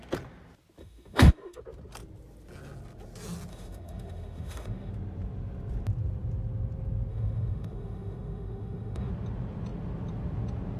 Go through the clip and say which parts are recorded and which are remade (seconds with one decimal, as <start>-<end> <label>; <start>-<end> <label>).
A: 0.0-0.8 recorded; 0.8-1.6 remade; 1.6-3.5 recorded; 3.5-4.9 remade; 4.9-7.1 recorded; 7.1-9.1 remade; 9.1-10.8 recorded